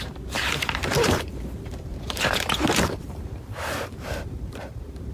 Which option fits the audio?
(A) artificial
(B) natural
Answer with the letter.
A